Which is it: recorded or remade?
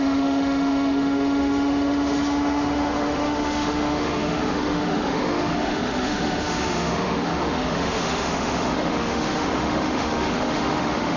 remade